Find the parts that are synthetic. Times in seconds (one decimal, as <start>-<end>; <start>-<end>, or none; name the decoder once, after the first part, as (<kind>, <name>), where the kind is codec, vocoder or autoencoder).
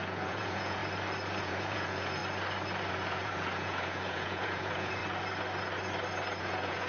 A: 0.0-0.8 (vocoder, Vocos); 1.4-2.2; 2.9-5.0; 6.4-6.9